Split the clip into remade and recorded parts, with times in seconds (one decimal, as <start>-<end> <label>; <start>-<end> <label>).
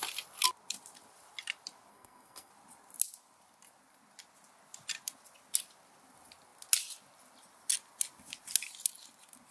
0.0-1.9 recorded; 1.9-2.5 remade; 2.5-9.5 recorded